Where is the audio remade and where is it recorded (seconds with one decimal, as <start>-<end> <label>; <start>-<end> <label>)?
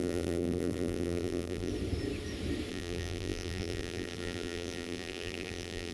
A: 0.0-1.7 remade; 1.7-2.7 recorded; 2.7-5.9 remade